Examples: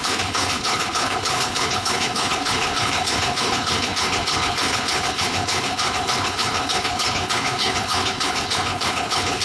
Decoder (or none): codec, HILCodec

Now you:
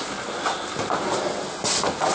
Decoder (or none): none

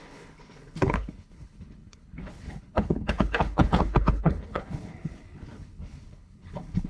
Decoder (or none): codec, HILCodec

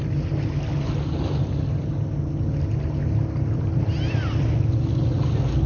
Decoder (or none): none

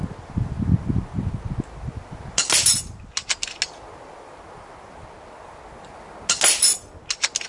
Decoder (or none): none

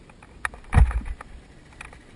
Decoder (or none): none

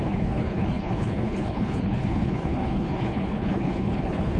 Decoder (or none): codec, HILCodec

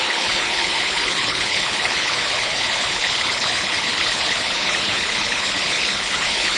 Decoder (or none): codec, HILCodec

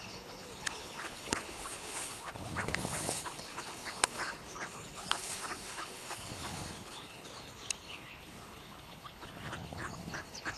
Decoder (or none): codec, HILCodec